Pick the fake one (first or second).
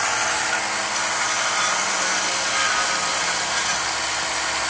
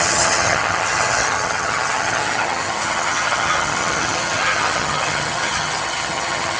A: second